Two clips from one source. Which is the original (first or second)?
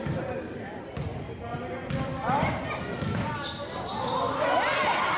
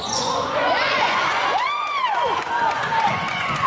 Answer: first